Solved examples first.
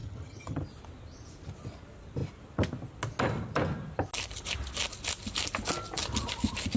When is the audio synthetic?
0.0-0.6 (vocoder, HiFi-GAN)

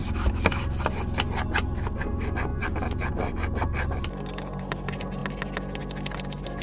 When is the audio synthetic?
none

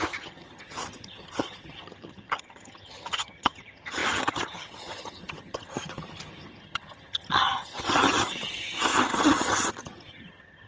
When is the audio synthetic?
0.0-10.7 (vocoder, HiFi-GAN)

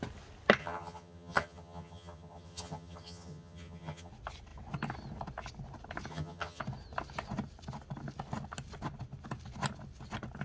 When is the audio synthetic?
0.6-4.1 (vocoder, HiFi-GAN); 6.1-6.6